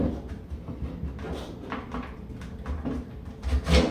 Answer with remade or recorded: recorded